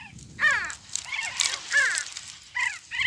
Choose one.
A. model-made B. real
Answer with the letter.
B